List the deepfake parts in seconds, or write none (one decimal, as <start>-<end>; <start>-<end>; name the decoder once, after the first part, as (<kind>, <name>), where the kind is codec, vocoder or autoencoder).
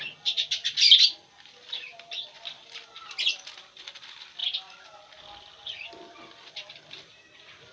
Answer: none